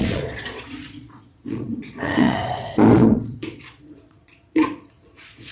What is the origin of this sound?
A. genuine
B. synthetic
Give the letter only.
B